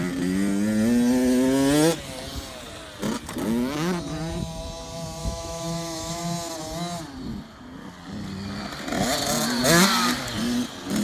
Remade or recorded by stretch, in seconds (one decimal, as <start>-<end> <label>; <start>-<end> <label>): 0.0-5.2 recorded; 5.2-6.2 remade; 6.2-11.0 recorded